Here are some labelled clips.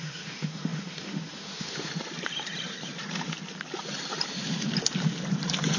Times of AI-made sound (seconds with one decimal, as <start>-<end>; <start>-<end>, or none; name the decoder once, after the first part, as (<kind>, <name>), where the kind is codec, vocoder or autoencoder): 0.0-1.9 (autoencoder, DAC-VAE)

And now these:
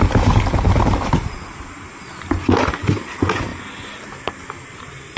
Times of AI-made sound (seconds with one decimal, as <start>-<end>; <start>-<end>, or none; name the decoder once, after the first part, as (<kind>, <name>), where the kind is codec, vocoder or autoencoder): none

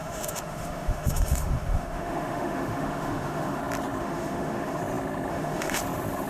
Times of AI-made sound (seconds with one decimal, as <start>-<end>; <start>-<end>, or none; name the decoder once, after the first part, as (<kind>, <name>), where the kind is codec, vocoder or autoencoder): 0.0-3.6 (autoencoder, DAC-VAE); 4.0-4.8; 5.3-5.8

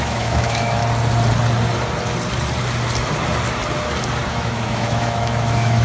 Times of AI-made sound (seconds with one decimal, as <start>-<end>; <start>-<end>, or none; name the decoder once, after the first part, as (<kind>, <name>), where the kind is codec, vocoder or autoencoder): 0.0-0.8 (autoencoder, DAC-VAE); 4.3-5.8

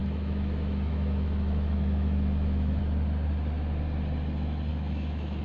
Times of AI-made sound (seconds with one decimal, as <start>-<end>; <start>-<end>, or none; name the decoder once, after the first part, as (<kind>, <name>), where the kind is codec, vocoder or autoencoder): 0.0-2.8 (autoencoder, DAC-VAE); 4.7-5.4

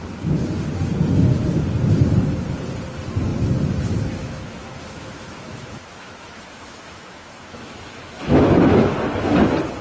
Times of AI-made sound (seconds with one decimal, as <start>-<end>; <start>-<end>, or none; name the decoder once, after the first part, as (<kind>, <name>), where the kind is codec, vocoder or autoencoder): 4.2-8.9 (autoencoder, DAC-VAE)